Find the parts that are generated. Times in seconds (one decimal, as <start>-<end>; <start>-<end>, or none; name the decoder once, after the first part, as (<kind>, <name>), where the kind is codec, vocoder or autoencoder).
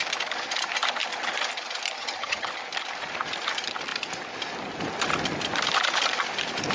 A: 2.0-2.5 (vocoder, HiFi-GAN)